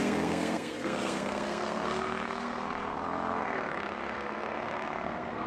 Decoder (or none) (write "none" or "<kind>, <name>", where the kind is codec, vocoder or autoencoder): codec, SNAC